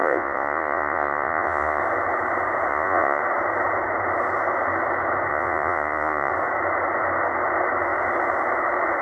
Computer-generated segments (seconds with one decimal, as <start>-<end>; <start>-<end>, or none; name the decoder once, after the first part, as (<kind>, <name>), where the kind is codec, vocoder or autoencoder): 0.0-1.8 (vocoder, Vocos); 2.7-3.2; 5.3-6.3

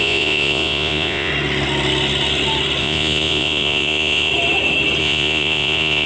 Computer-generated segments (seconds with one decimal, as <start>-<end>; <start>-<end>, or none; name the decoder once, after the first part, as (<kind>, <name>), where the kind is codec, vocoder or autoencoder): 0.0-1.3 (vocoder, Vocos); 2.8-4.3; 5.0-6.1

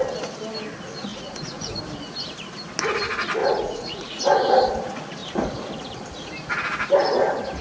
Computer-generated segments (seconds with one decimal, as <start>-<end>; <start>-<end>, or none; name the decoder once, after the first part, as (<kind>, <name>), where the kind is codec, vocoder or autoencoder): 1.1-1.8 (vocoder, Vocos); 3.4-4.2

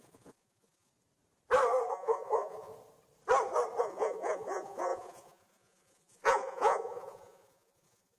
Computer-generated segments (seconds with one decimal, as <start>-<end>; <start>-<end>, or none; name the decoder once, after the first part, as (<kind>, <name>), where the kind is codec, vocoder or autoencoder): 0.0-0.9 (vocoder, Vocos); 1.9-2.7; 3.8-8.2

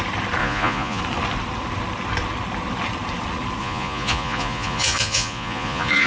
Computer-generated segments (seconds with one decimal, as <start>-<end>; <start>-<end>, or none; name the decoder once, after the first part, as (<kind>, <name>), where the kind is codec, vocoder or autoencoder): 0.4-1.0 (vocoder, Vocos); 3.6-6.1

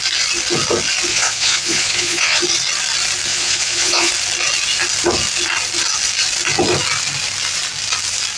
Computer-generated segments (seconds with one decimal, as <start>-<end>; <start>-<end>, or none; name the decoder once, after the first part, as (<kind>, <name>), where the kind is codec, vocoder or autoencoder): 1.1-2.4 (vocoder, Vocos); 3.3-4.1

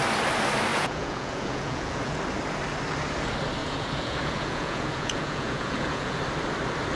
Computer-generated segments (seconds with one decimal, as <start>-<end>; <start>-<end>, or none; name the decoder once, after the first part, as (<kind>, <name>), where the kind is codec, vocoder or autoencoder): 0.7-2.2 (vocoder, Vocos); 3.6-6.2

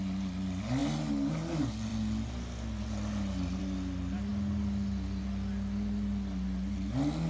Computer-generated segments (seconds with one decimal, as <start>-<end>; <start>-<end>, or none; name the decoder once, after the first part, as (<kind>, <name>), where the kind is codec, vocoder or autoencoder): none